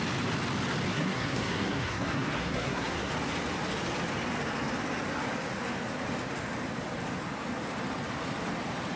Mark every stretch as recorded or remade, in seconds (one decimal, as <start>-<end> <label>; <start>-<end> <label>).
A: 0.0-0.9 recorded; 0.9-3.1 remade; 3.1-9.0 recorded